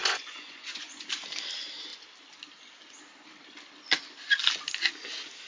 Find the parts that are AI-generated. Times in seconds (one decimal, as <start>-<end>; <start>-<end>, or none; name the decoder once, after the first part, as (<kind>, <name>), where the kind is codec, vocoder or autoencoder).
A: 0.0-1.1 (vocoder, Vocos)